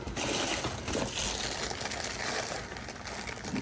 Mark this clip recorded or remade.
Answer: recorded